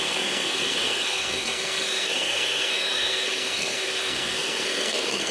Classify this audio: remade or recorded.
remade